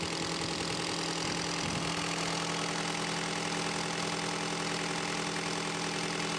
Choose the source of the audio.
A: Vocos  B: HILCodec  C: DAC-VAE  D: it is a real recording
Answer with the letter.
D